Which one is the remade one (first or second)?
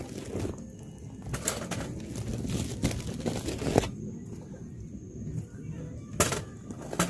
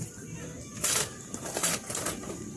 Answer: second